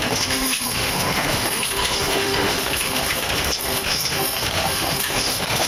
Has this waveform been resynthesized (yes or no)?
yes